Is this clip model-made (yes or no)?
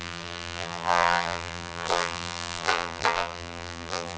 yes